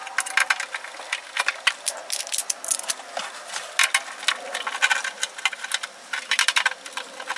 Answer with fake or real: real